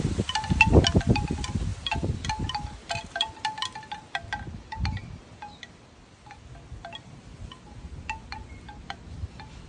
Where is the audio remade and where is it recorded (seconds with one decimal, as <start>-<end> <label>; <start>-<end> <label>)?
0.0-9.7 recorded